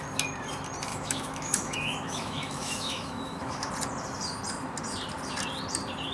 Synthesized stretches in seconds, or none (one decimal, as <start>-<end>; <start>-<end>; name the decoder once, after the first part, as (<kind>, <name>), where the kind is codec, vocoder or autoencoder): 0.9-3.7 (autoencoder, DAC-VAE)